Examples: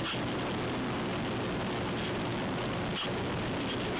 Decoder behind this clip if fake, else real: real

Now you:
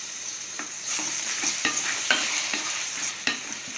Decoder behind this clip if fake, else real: fake, vocoder, BigVGAN v2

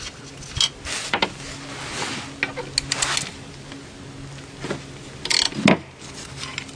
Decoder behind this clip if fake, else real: real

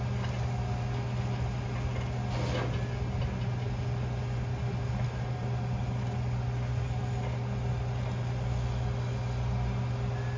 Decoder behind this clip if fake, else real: real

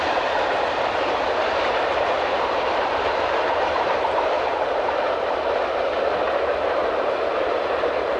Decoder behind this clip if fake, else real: fake, vocoder, BigVGAN v2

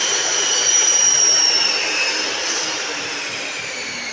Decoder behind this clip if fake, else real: fake, vocoder, BigVGAN v2